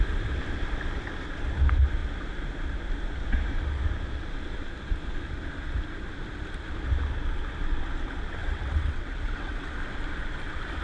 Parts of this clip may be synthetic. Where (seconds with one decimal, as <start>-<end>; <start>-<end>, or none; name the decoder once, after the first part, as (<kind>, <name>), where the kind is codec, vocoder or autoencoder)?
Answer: 8.4-9.7 (vocoder, WaveNeXt)